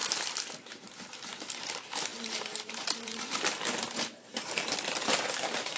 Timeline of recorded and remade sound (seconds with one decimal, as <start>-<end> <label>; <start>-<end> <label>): 0.0-2.1 recorded; 2.1-5.8 remade